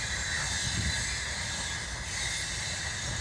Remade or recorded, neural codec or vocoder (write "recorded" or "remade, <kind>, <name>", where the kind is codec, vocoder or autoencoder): recorded